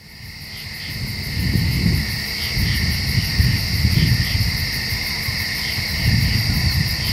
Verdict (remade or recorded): recorded